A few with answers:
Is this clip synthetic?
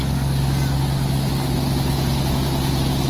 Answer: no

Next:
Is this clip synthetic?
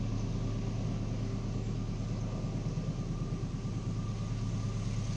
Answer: no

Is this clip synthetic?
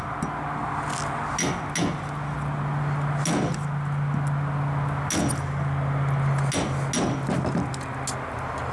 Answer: no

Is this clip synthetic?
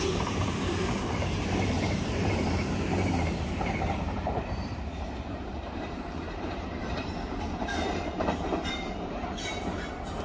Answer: yes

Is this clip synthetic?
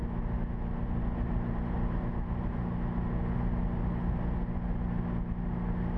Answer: no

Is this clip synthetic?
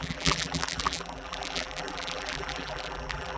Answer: yes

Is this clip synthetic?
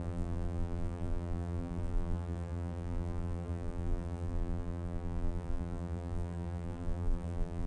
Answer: yes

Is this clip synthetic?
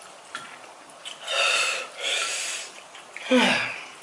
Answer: yes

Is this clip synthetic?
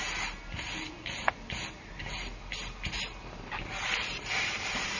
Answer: no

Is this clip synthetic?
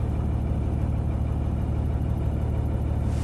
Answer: no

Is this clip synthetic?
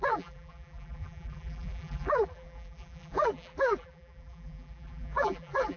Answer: yes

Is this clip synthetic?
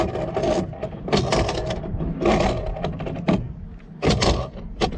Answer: no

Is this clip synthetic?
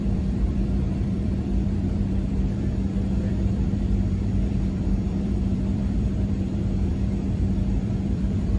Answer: yes